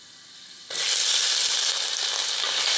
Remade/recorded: recorded